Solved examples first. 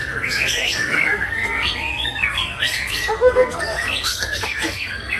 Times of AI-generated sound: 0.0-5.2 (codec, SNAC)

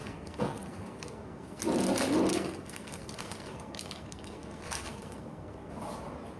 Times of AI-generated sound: 0.0-1.6 (codec, SNAC); 2.3-5.7